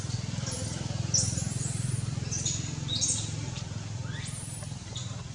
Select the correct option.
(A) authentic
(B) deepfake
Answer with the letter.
A